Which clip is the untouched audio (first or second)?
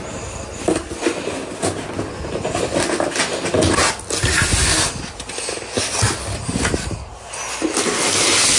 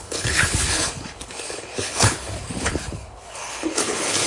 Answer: first